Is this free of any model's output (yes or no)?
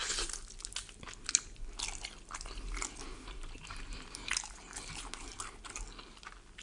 yes